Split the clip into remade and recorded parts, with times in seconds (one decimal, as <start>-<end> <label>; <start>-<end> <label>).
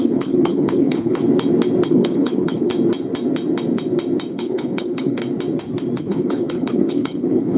0.0-1.2 remade; 1.2-1.9 recorded; 1.9-2.7 remade; 2.7-4.3 recorded; 4.3-5.2 remade; 5.2-6.0 recorded; 6.0-7.6 remade